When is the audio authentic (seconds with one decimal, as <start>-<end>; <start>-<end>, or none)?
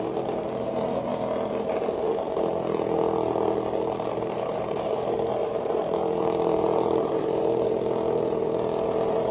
1.1-4.1